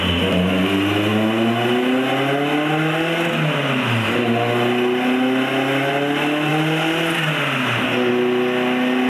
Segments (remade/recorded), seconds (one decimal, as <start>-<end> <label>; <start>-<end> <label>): 0.0-9.1 recorded